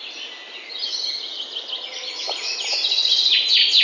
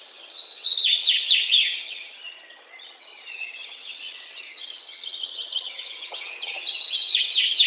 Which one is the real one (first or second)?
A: first